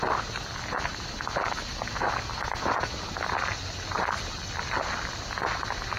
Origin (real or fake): real